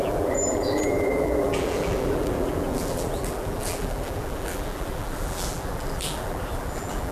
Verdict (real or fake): fake